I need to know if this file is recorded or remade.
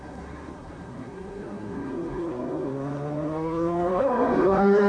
remade